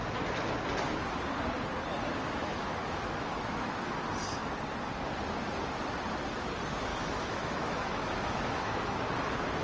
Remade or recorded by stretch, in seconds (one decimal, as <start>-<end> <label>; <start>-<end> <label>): 0.0-2.4 recorded; 2.4-4.0 remade; 4.0-6.9 recorded; 6.9-9.0 remade; 9.0-9.6 recorded